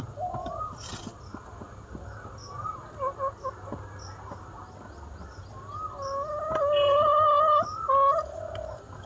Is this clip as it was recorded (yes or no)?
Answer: yes